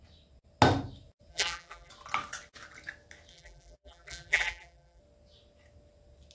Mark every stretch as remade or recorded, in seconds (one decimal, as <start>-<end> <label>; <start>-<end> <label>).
0.0-1.3 recorded; 1.3-1.9 remade; 1.9-3.3 recorded; 3.3-5.0 remade; 5.0-6.3 recorded